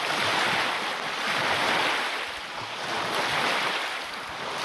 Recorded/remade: recorded